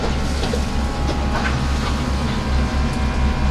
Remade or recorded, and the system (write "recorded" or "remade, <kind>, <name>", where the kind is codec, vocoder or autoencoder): recorded